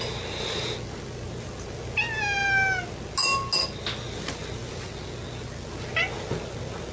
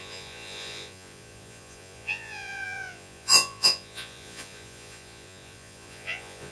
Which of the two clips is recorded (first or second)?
first